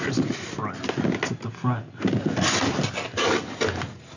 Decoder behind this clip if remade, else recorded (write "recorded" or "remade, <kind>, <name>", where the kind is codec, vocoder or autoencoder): recorded